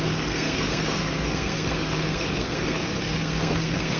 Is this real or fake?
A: fake